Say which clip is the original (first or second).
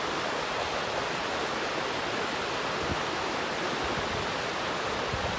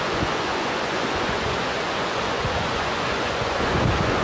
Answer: first